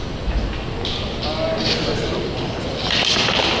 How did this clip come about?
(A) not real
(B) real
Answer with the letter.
B